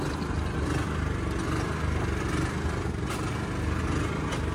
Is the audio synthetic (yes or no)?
no